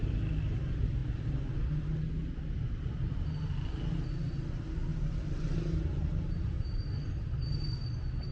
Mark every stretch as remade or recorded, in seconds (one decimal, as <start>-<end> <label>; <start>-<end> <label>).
0.0-4.9 recorded; 4.9-6.8 remade; 6.8-8.3 recorded